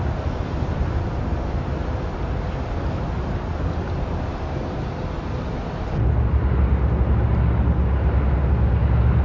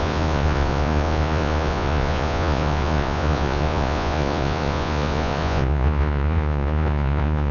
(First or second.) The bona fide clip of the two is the first